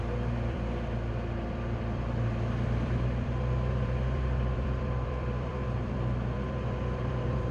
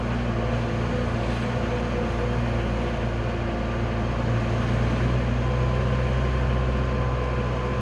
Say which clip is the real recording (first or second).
second